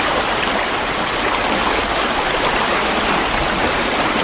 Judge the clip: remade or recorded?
recorded